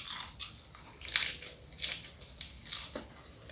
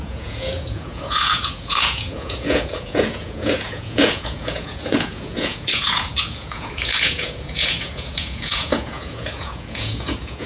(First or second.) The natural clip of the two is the first